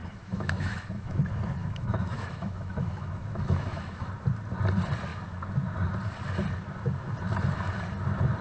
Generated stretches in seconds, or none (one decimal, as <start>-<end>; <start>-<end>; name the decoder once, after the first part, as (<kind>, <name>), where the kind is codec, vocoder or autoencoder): 0.0-1.2 (autoencoder, DAC-VAE); 1.6-4.1